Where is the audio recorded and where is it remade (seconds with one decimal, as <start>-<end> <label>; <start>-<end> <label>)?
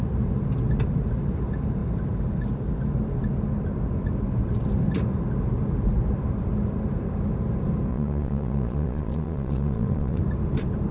0.0-7.9 recorded; 7.9-10.2 remade; 10.2-10.9 recorded